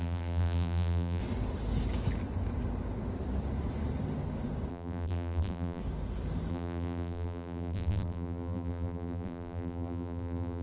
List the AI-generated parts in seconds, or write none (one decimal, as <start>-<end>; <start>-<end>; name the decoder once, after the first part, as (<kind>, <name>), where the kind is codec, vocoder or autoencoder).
0.0-1.2 (vocoder, BigVGAN v2); 4.7-5.8; 6.5-10.6